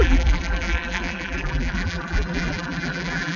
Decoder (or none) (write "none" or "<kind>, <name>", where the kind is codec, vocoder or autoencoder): vocoder, BigVGAN v2